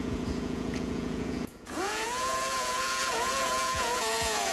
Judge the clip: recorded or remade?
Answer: remade